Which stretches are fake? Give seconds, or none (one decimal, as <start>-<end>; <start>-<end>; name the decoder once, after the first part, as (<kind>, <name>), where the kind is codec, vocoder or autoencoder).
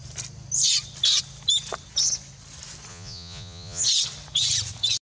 2.9-3.8 (vocoder, Vocos)